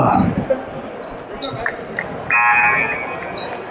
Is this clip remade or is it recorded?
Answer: recorded